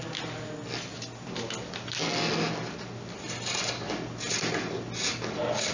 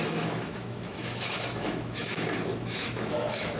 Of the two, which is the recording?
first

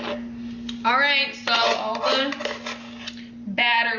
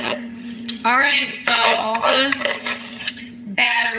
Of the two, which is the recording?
first